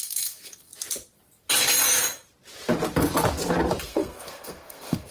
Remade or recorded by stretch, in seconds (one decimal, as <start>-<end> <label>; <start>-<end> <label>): 0.0-0.7 remade; 0.7-3.8 recorded; 3.8-5.1 remade